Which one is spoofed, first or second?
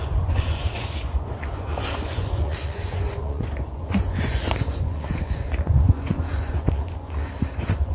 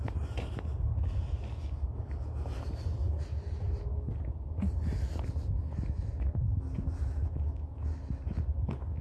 first